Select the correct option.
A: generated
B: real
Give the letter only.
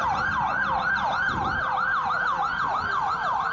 A